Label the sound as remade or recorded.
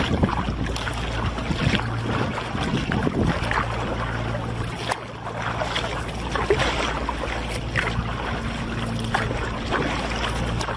recorded